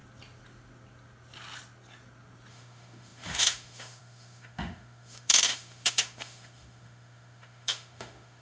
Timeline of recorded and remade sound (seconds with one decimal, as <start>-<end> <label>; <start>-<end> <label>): 0.0-2.5 recorded; 2.5-8.4 remade